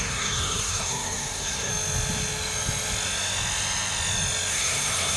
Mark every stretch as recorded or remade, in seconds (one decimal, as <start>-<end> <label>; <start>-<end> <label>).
0.0-1.7 remade; 1.7-4.5 recorded; 4.5-5.2 remade